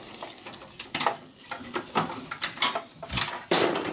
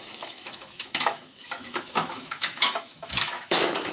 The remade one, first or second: second